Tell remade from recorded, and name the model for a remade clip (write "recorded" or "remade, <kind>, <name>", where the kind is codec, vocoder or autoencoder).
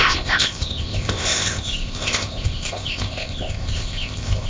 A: remade, codec, ZipCodec